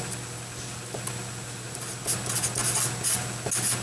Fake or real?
real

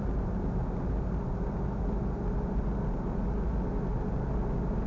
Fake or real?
real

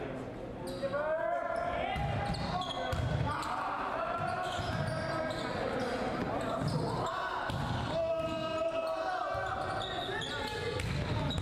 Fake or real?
real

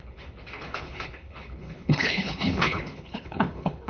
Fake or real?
fake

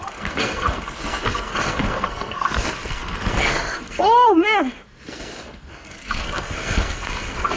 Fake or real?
fake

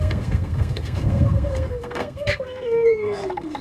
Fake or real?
fake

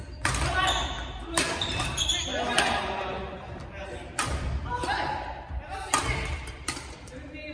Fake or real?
real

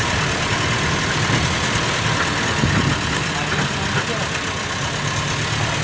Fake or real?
real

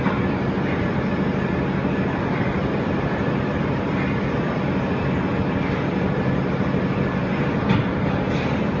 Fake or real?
real